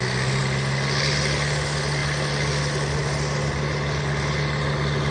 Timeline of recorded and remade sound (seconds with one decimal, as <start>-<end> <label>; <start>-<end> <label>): 0.0-5.1 recorded